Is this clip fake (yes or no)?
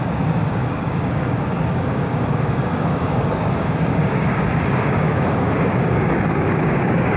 yes